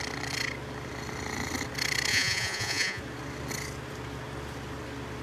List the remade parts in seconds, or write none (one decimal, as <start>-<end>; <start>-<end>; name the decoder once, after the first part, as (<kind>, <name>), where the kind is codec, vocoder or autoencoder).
2.1-3.0 (vocoder, Vocos)